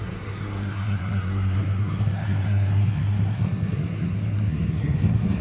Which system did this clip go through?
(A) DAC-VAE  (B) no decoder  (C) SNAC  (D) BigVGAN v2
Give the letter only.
C